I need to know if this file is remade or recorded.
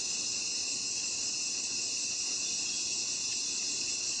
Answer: recorded